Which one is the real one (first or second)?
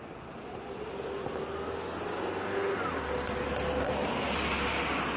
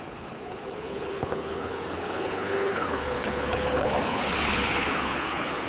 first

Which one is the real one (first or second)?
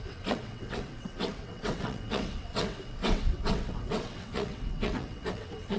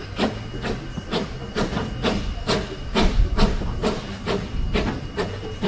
second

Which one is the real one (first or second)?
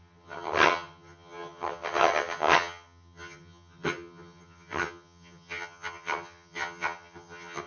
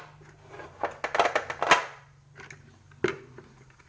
second